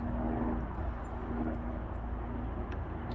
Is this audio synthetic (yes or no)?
no